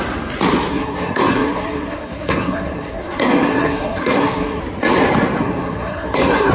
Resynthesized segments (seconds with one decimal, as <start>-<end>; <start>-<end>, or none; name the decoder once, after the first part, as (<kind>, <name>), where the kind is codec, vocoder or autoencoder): 0.7-4.6 (codec, SNAC); 5.4-6.5

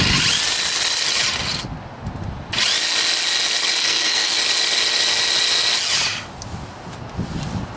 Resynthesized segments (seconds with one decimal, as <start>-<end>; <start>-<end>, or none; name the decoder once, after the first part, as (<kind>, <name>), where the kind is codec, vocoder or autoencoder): 3.8-4.4 (codec, SNAC)

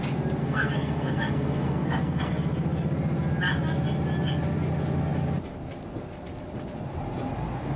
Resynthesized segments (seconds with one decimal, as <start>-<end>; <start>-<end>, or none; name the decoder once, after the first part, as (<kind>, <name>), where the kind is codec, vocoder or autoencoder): 0.4-2.3 (codec, SNAC)

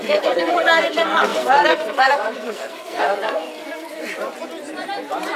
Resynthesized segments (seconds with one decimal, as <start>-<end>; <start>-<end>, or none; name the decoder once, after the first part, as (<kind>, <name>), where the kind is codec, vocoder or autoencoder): 0.0-4.1 (codec, SNAC)

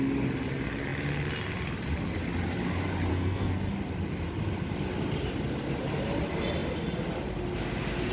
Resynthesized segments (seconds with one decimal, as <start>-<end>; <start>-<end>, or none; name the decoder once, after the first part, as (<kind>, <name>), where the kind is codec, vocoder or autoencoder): 3.1-3.7 (codec, SNAC)